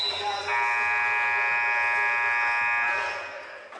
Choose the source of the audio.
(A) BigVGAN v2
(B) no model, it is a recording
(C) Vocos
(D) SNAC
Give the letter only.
B